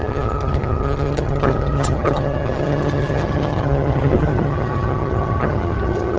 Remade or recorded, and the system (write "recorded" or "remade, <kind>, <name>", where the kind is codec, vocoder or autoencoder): remade, vocoder, HiFi-GAN